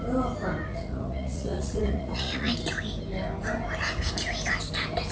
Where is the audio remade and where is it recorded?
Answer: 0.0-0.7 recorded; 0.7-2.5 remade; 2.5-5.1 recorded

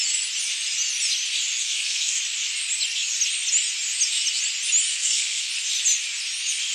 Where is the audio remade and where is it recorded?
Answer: 0.0-1.6 recorded; 1.6-2.2 remade; 2.2-4.9 recorded; 4.9-5.5 remade; 5.5-6.7 recorded

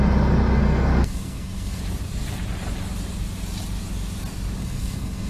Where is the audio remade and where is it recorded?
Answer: 0.0-0.6 recorded; 0.6-1.8 remade; 1.8-4.6 recorded; 4.6-5.3 remade